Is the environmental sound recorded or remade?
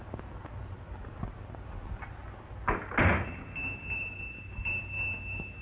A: recorded